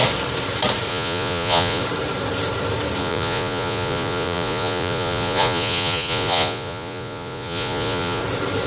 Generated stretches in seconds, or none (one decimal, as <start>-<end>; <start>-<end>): 0.9-1.8; 3.0-8.2